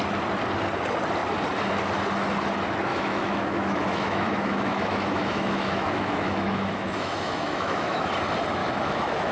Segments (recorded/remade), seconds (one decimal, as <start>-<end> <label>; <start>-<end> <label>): 0.0-2.9 recorded; 2.9-8.1 remade; 8.1-8.6 recorded; 8.6-9.3 remade